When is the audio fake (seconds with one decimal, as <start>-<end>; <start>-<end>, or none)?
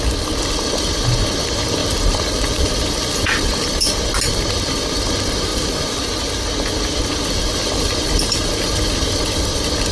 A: 1.8-3.9; 5.5-9.9